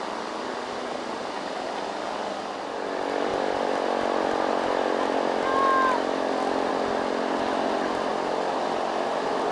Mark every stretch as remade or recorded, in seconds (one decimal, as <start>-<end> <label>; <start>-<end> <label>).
0.0-9.5 recorded